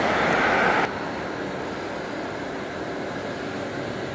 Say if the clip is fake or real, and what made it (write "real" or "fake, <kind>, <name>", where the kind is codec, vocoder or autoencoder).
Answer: real